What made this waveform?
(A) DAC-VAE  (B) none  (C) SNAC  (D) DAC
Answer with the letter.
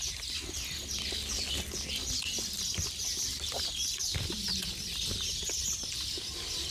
B